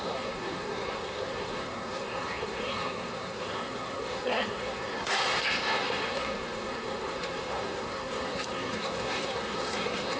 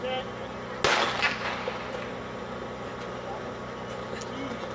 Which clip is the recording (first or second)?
second